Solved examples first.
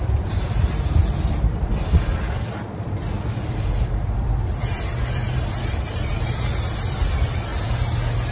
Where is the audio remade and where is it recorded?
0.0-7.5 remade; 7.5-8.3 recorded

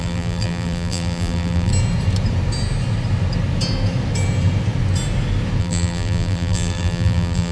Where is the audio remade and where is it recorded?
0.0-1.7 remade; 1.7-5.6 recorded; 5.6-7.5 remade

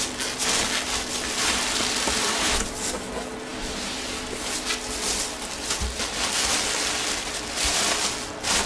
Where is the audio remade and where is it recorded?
0.0-8.7 recorded

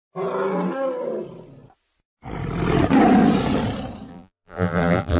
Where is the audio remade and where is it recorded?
0.0-4.1 recorded; 4.1-5.2 remade

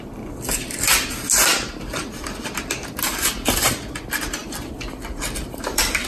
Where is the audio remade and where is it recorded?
0.0-6.1 recorded

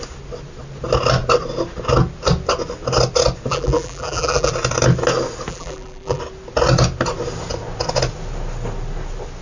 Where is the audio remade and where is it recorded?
0.0-3.5 recorded; 3.5-4.5 remade; 4.5-5.5 recorded; 5.5-6.2 remade; 6.2-9.4 recorded

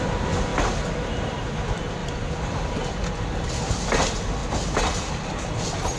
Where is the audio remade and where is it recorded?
0.0-2.0 recorded; 2.0-3.7 remade; 3.7-6.0 recorded

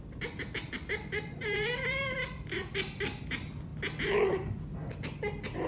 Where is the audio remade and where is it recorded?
0.0-3.7 remade; 3.7-5.7 recorded